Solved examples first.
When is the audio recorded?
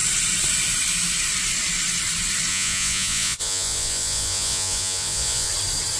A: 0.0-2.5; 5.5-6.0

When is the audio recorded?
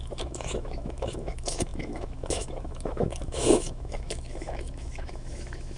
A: none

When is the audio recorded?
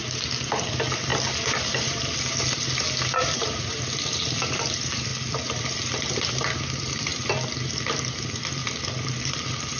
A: 1.1-3.2